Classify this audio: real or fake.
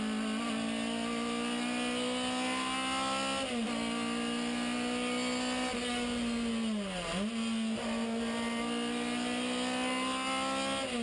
real